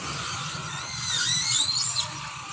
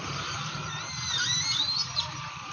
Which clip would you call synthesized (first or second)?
first